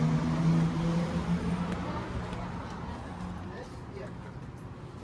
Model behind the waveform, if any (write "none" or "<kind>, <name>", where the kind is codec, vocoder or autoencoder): none